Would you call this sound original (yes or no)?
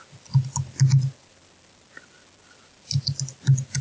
yes